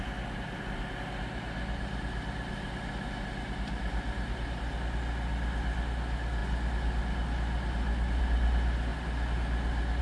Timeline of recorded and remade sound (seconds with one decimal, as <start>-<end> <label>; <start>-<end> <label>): 0.0-10.0 recorded